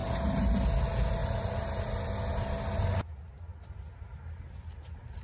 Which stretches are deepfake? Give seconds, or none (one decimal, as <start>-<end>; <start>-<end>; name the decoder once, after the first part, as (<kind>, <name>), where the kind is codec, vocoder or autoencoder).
0.0-0.6 (vocoder, BigVGAN v2)

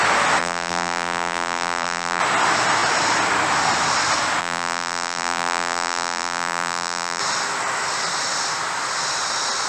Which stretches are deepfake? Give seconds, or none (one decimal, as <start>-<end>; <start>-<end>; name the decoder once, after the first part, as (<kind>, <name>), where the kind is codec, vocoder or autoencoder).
0.4-2.2 (vocoder, BigVGAN v2); 4.4-7.2